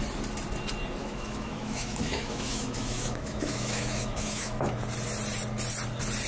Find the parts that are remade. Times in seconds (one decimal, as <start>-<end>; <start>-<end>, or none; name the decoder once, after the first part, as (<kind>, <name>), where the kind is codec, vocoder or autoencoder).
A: 1.0-4.8 (autoencoder, DAC-VAE)